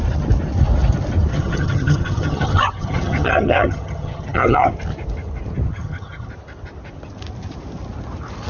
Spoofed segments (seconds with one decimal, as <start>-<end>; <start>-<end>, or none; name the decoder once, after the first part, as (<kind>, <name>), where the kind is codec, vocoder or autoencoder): 1.3-4.7 (vocoder, HiFi-GAN); 5.7-6.3